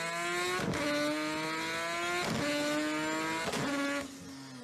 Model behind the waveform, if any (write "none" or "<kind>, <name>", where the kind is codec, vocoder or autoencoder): none